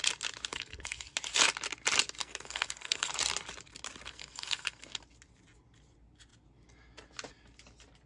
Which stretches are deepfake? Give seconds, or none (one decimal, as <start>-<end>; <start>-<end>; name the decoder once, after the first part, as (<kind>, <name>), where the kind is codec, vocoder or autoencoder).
0.5-1.1 (codec, SNAC); 2.2-3.1; 4.1-5.0